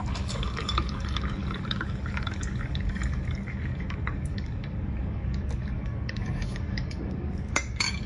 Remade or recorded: remade